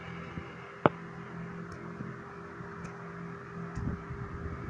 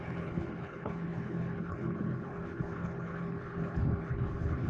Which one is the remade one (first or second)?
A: second